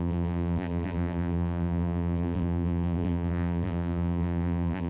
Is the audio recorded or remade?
remade